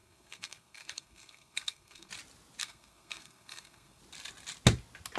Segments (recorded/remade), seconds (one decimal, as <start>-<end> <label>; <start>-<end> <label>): 0.0-2.1 remade; 2.1-2.6 recorded; 2.6-4.0 remade; 4.0-5.2 recorded